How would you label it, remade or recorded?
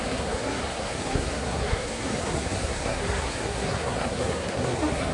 remade